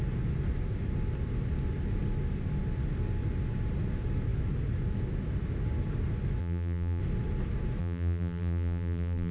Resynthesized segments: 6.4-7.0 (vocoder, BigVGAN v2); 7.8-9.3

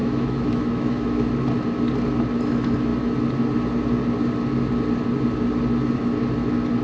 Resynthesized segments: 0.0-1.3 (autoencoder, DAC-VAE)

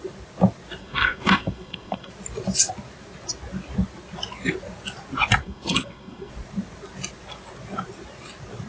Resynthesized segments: 0.8-2.1 (codec, SNAC); 5.4-6.3

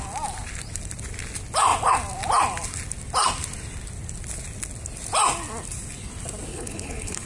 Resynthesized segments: 6.5-7.3 (codec, HILCodec)

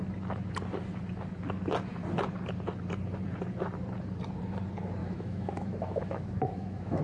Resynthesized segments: 5.0-7.0 (autoencoder, DAC-VAE)

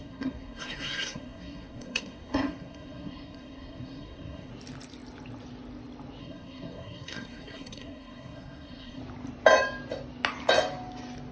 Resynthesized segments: 0.0-4.5 (codec, SNAC); 6.2-9.0